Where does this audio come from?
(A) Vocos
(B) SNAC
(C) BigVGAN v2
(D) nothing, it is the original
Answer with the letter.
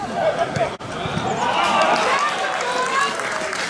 D